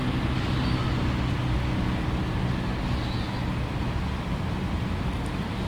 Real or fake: real